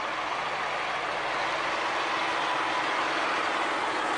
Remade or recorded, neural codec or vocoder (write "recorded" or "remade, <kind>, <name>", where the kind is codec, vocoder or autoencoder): recorded